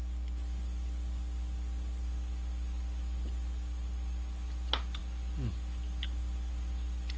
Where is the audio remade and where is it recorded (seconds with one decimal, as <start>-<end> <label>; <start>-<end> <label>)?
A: 0.0-7.2 recorded